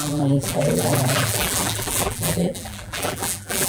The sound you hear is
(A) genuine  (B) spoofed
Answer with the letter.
B